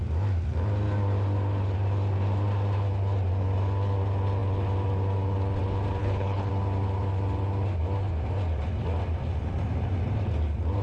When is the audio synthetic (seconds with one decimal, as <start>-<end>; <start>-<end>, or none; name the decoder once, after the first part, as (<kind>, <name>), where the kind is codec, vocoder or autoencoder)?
6.0-6.5 (codec, HILCodec)